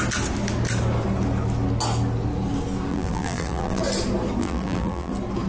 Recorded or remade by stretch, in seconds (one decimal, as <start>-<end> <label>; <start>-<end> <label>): 0.0-2.9 recorded; 2.9-3.8 remade; 3.8-4.4 recorded; 4.4-5.1 remade; 5.1-5.5 recorded

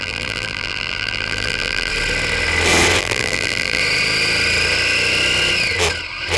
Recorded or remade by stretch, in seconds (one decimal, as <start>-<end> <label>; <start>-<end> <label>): 0.0-1.9 remade; 1.9-3.0 recorded; 3.0-3.8 remade; 3.8-6.4 recorded